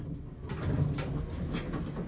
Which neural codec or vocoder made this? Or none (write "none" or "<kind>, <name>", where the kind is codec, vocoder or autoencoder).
none